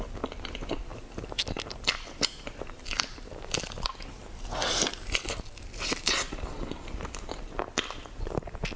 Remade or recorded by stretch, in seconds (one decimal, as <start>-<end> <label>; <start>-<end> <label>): 0.0-0.9 recorded; 0.9-3.6 remade; 3.6-4.2 recorded; 4.2-6.0 remade; 6.0-8.8 recorded